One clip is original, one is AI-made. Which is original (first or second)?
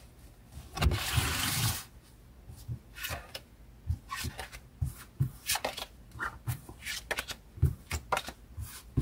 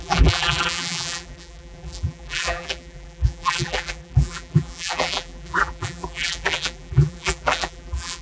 first